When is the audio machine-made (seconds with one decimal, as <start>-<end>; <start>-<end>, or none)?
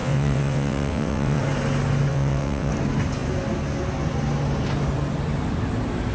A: 0.0-1.4; 2.1-2.7